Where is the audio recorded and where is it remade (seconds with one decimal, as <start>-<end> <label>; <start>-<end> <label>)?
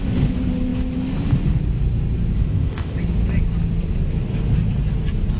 0.0-2.4 recorded; 2.4-3.0 remade; 3.0-5.4 recorded